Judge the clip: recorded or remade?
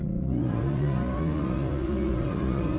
remade